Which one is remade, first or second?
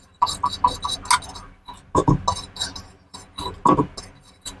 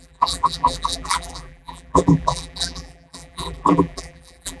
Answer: second